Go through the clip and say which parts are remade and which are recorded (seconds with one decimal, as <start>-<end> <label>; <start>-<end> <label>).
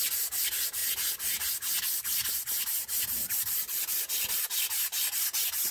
0.0-5.7 recorded